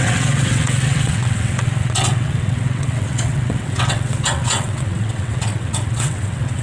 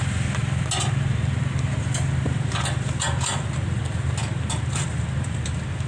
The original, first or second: second